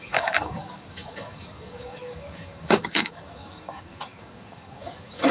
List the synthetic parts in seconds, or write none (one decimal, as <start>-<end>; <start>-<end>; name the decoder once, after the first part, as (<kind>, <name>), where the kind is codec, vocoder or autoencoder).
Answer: 0.0-5.3 (codec, DAC)